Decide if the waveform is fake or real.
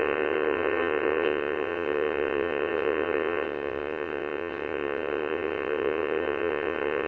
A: fake